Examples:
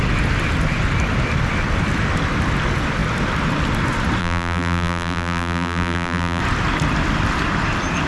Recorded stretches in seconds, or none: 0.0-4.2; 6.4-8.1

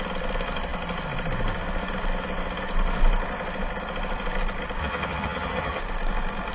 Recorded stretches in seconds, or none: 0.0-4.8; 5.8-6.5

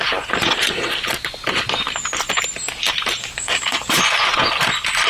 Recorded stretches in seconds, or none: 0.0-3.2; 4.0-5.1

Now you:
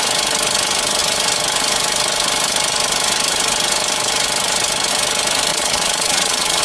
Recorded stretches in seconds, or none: 0.0-5.5